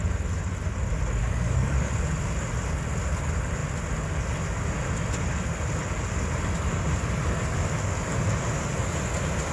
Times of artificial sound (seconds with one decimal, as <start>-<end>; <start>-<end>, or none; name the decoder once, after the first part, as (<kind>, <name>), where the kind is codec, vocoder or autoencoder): 1.2-1.9 (codec, DAC)